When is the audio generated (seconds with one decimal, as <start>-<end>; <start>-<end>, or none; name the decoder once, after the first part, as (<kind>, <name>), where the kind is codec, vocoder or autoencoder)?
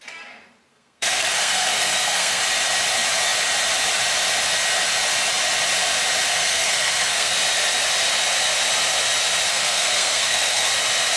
0.7-2.4 (codec, SNAC); 6.3-7.3; 9.5-10.7